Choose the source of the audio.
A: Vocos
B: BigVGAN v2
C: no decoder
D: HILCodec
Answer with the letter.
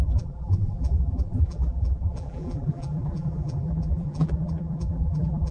B